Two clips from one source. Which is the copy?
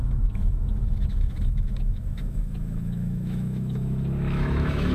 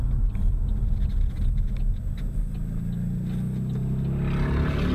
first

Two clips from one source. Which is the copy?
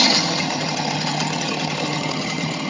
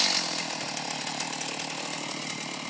first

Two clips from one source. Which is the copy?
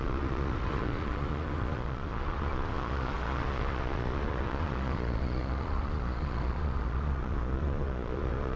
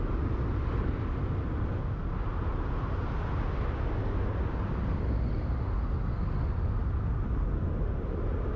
first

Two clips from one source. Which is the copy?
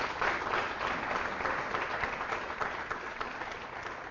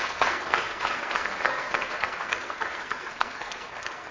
second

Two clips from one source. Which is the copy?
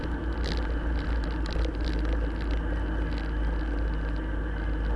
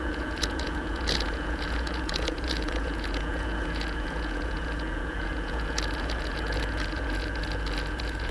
second